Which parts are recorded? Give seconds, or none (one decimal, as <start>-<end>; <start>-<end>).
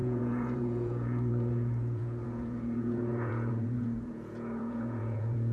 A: none